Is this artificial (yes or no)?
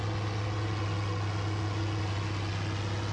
no